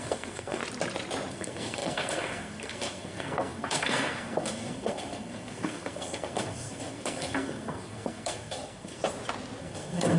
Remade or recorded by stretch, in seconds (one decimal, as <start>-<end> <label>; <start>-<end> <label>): 0.0-0.6 remade; 0.6-1.3 recorded; 1.3-9.0 remade; 9.0-9.6 recorded; 9.6-10.2 remade